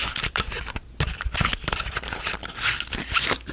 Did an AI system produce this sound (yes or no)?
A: yes